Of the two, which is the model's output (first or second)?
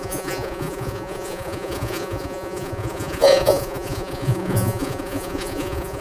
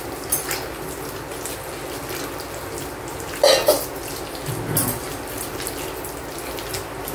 first